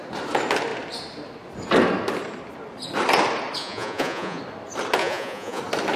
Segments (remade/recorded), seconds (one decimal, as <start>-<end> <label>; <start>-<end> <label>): 0.0-3.6 recorded; 3.6-4.4 remade; 4.4-5.0 recorded; 5.0-5.6 remade; 5.6-6.0 recorded